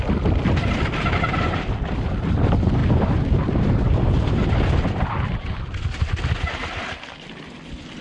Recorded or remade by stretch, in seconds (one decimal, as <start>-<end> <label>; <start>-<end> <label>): 0.0-8.0 recorded